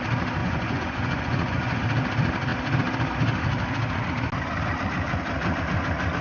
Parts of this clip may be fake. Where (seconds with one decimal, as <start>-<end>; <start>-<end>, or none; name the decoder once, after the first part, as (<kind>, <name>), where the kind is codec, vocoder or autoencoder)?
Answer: 0.4-1.8 (vocoder, Vocos)